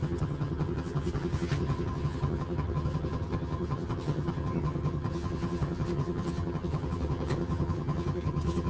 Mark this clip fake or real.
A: fake